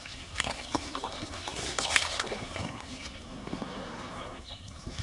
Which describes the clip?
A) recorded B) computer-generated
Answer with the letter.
B